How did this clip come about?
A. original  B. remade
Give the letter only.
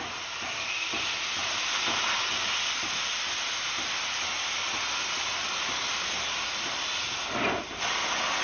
A